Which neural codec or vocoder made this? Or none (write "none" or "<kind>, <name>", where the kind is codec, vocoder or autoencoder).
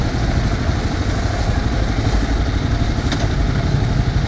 none